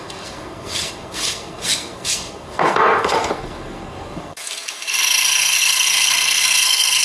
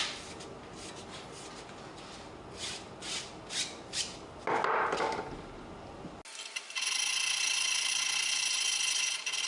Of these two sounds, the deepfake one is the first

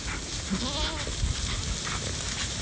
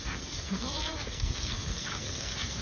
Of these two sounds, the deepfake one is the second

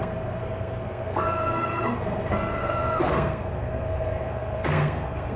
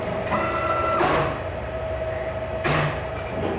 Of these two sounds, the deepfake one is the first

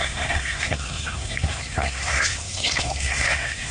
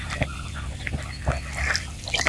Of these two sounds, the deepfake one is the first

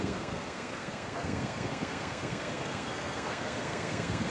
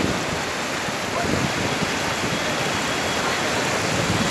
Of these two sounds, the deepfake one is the first